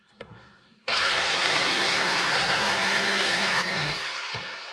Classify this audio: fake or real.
fake